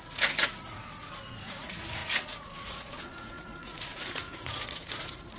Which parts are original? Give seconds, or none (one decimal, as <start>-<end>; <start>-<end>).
none